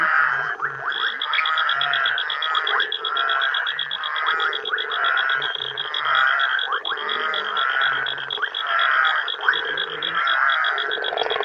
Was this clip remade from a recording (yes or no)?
yes